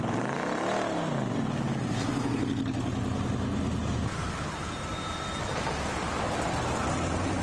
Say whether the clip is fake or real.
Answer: real